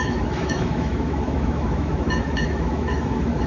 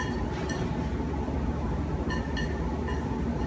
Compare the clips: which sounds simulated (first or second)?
first